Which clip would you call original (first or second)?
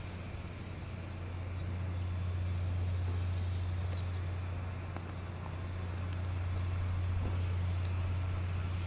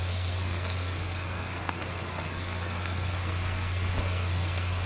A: first